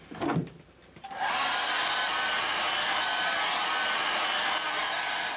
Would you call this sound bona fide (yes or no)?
yes